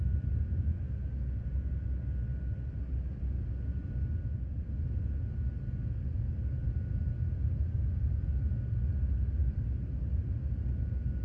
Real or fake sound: real